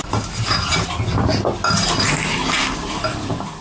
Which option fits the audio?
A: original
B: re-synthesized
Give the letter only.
A